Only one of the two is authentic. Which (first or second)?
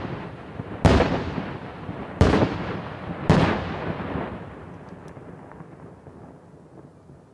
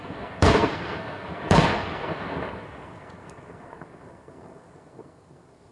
first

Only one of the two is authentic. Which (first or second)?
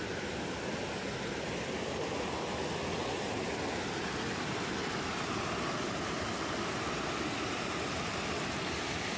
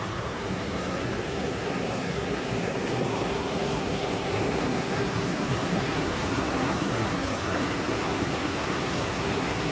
first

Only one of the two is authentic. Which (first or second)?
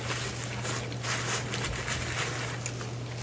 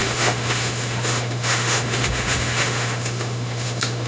first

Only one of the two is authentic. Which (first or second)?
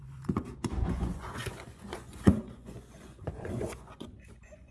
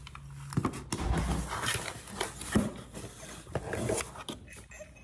second